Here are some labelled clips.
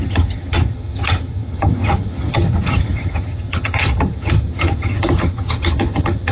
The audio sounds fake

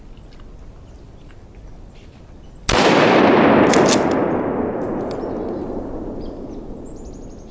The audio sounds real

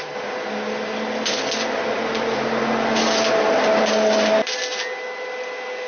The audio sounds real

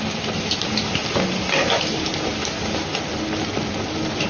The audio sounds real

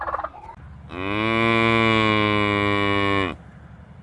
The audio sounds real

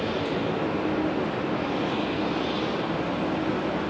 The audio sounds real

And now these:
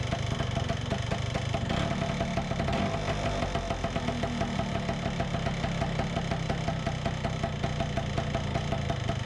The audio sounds real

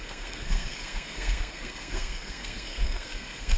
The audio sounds fake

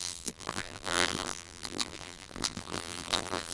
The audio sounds fake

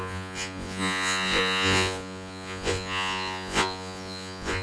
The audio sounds fake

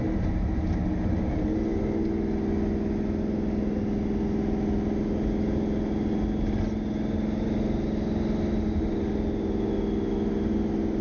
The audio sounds real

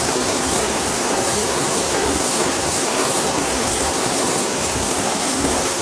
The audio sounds fake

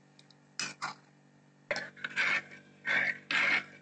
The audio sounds real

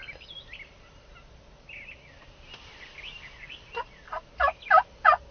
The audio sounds real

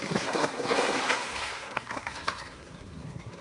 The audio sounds fake